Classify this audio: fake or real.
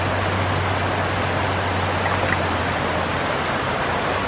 real